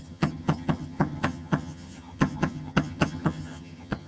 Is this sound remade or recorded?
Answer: remade